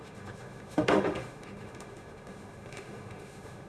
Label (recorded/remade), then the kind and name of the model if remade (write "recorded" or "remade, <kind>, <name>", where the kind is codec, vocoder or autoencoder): remade, autoencoder, DAC-VAE